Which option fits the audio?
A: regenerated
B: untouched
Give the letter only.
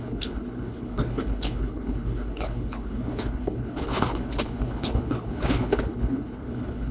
A